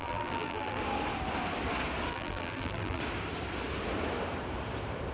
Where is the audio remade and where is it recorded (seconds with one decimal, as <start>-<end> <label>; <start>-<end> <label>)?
0.0-0.8 remade; 0.8-2.1 recorded; 2.1-3.0 remade; 3.0-5.1 recorded